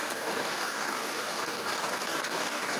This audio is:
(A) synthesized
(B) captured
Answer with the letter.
A